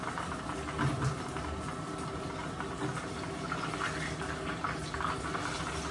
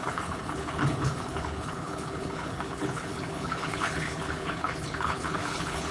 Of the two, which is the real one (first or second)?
first